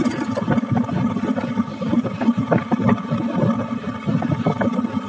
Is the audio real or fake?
real